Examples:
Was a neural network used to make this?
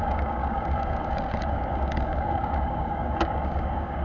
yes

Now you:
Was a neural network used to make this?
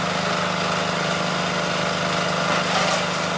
no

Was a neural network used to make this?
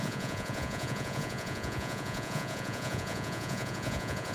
yes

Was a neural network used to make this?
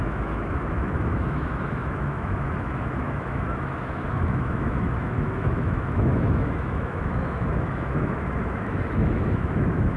yes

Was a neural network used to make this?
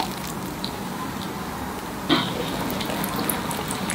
no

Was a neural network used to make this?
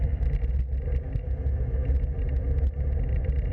no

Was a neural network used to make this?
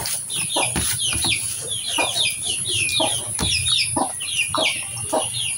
no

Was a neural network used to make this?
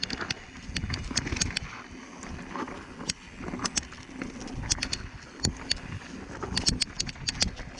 no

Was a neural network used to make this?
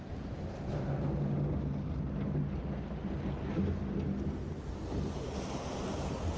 no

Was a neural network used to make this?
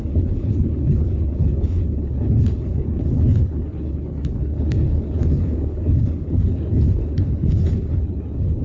yes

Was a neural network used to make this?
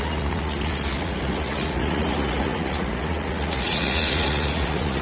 yes